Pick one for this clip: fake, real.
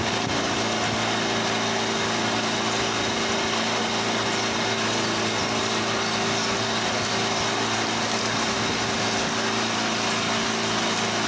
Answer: real